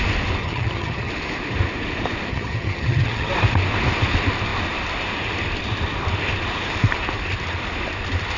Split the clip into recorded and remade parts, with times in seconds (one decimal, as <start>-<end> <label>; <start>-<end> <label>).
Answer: 0.0-0.4 recorded; 0.4-1.1 remade; 1.1-2.3 recorded; 2.3-3.3 remade; 3.3-8.4 recorded